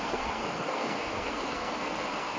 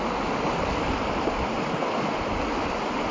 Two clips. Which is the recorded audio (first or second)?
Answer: second